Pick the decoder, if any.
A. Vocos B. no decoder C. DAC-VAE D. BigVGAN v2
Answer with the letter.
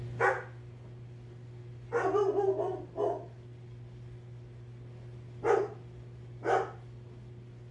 B